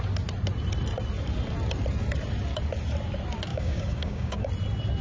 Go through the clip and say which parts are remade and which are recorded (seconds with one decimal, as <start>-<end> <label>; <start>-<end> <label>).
0.0-3.5 recorded; 3.5-4.5 remade; 4.5-5.0 recorded